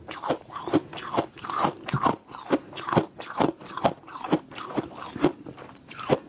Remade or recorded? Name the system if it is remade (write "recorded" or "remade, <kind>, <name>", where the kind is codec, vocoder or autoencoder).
recorded